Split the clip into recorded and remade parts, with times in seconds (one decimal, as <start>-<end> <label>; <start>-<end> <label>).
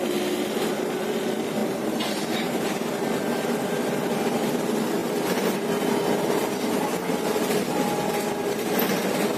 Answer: 0.0-1.6 recorded; 1.6-2.6 remade; 2.6-9.4 recorded